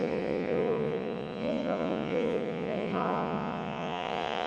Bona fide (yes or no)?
no